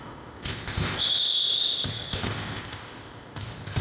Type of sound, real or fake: fake